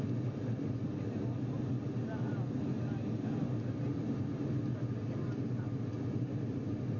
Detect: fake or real real